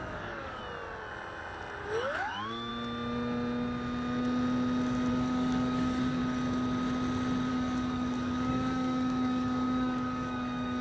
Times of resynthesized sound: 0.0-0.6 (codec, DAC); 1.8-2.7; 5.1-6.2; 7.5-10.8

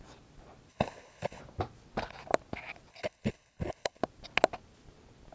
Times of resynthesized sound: 0.7-1.4 (codec, HILCodec); 2.9-4.0

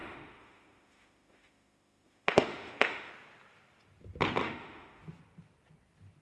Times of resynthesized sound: 0.0-3.1 (autoencoder, DAC-VAE); 4.4-5.0